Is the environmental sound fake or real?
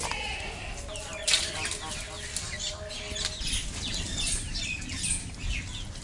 real